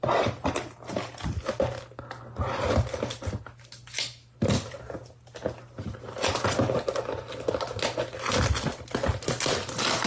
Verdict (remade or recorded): recorded